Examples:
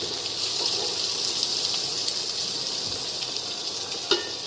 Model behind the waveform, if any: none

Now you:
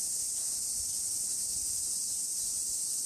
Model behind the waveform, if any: none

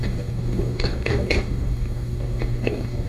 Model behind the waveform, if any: codec, DAC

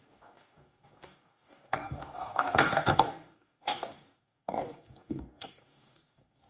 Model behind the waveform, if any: codec, DAC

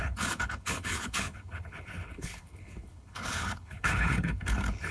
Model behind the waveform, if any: codec, HILCodec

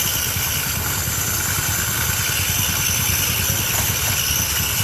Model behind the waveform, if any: none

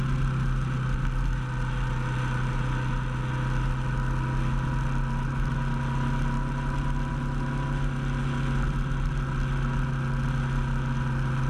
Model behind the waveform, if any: none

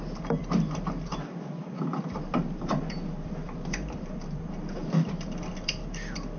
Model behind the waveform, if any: vocoder, BigVGAN v2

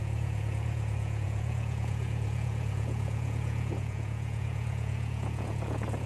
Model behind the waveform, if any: vocoder, Vocos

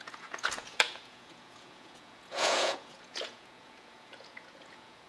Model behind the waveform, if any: vocoder, Vocos